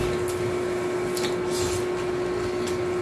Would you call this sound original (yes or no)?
yes